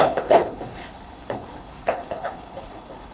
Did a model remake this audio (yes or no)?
yes